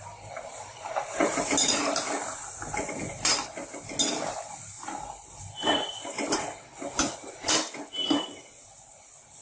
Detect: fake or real real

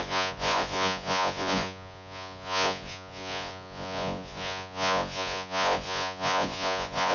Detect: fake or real fake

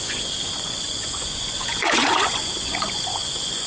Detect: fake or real fake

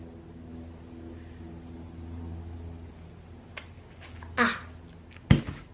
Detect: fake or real real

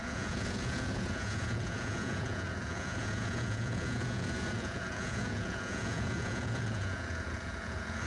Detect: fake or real fake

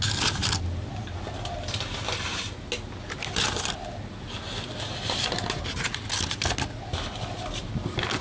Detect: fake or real real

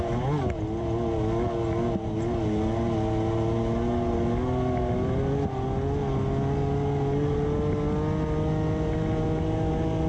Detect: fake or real real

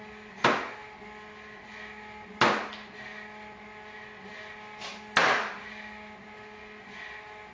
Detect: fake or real real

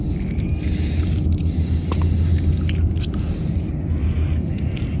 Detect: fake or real real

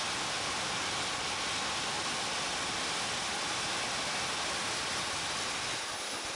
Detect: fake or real real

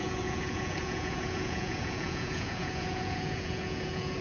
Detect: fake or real fake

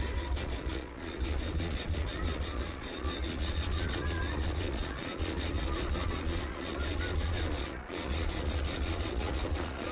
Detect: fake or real fake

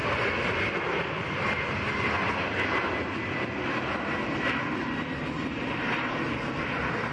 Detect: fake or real real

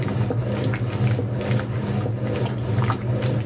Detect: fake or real real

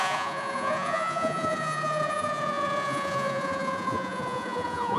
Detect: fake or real fake